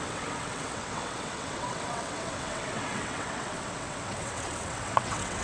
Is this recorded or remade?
remade